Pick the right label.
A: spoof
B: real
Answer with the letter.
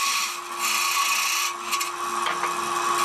B